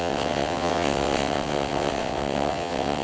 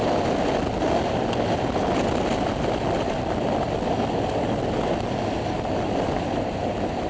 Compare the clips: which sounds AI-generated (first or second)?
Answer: first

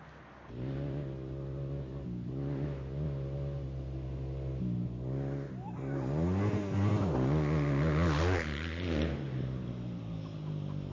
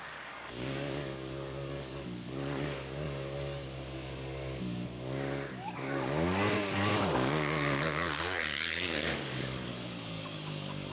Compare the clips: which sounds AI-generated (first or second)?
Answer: second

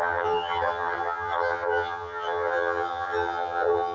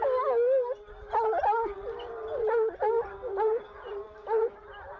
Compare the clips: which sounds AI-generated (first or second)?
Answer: first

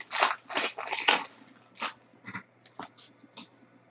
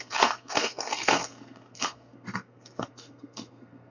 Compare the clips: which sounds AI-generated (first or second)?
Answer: second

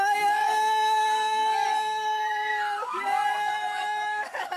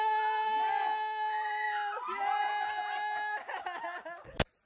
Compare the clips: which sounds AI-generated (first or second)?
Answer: first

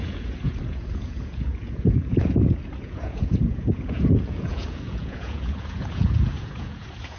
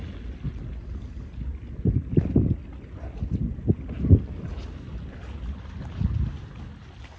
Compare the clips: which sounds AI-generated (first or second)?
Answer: first